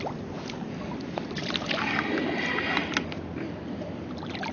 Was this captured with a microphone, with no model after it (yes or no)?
yes